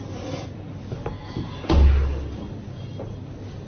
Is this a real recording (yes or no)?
yes